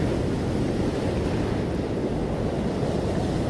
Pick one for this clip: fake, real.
real